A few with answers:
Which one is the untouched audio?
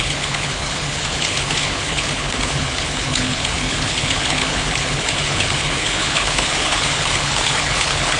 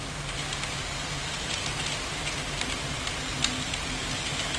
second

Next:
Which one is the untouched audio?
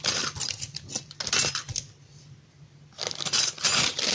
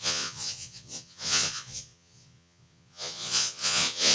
first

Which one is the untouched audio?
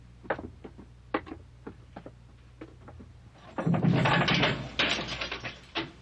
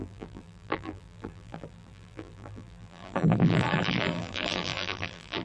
first